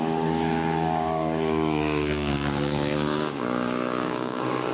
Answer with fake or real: fake